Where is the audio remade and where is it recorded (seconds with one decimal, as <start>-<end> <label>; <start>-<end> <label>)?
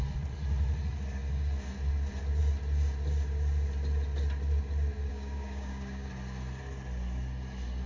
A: 0.0-5.1 recorded; 5.1-6.1 remade; 6.1-7.9 recorded